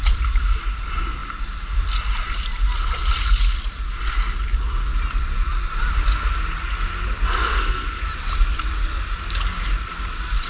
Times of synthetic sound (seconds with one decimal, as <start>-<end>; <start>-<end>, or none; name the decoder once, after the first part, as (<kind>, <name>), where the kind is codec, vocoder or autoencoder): 7.5-8.0 (codec, SNAC)